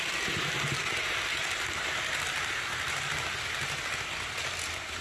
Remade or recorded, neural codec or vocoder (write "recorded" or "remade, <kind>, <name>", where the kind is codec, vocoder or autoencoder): recorded